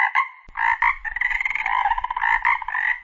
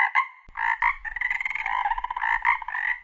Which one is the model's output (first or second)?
first